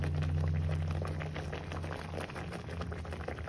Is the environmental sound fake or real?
real